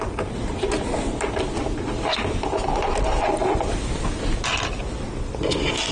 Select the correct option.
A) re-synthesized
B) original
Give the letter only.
B